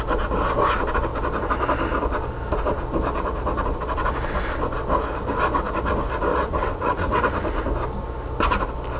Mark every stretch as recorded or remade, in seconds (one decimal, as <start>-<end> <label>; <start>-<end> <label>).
0.0-6.3 recorded; 6.3-7.2 remade; 7.2-9.0 recorded